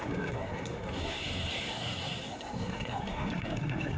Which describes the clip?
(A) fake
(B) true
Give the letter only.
A